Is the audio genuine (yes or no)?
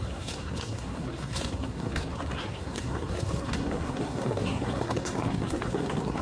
no